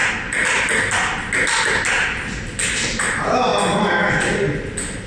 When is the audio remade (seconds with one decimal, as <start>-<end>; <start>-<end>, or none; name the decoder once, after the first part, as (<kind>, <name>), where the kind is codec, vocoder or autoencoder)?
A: none